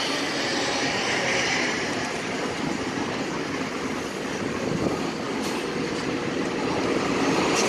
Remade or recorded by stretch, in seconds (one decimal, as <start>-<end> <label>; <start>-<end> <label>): 0.0-0.5 recorded; 0.5-2.4 remade; 2.4-7.7 recorded